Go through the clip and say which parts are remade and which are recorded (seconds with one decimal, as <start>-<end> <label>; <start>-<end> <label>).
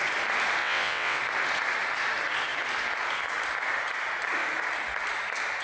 0.0-0.6 recorded; 0.6-1.2 remade; 1.2-5.6 recorded